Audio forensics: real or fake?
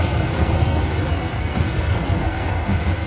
fake